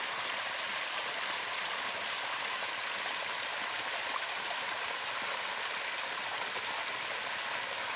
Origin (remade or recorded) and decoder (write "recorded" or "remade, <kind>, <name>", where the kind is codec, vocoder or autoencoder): recorded